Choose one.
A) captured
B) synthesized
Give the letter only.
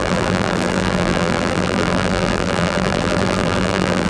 B